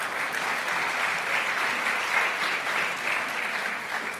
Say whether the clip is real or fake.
real